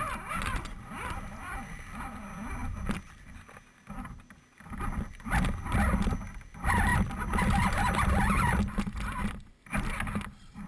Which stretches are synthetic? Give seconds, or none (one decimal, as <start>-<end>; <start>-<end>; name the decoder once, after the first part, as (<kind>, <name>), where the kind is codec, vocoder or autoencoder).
none